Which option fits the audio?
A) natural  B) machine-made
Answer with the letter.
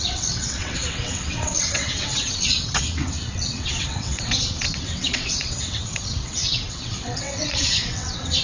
B